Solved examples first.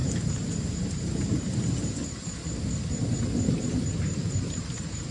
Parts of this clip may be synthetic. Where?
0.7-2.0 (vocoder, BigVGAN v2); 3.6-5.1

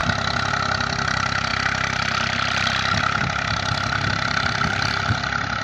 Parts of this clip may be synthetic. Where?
none

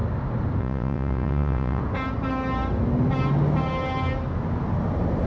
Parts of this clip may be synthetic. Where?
0.6-1.8 (vocoder, Vocos)

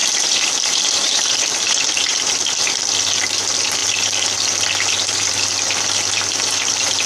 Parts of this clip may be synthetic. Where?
0.0-2.7 (vocoder, BigVGAN v2)

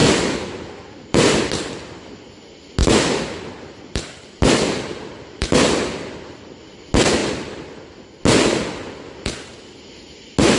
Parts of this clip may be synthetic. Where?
0.0-1.4 (vocoder, BigVGAN v2); 2.8-6.3; 7.2-8.2

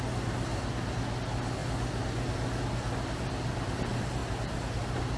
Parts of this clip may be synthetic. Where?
none

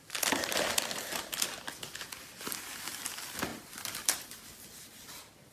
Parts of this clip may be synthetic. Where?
3.5-4.2 (vocoder, BigVGAN v2)

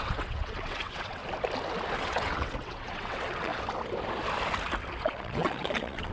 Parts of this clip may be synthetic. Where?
0.0-1.2 (vocoder, WaveNeXt); 1.9-3.5; 5.0-6.1